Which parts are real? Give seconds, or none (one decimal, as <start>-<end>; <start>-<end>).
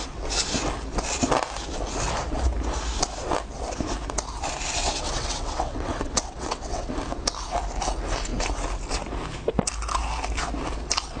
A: 0.0-4.8; 6.9-11.2